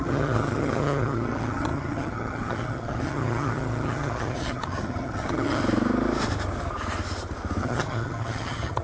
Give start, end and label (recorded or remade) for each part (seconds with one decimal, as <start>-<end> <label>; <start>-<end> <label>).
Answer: 0.0-5.6 remade; 5.6-7.6 recorded; 7.6-8.8 remade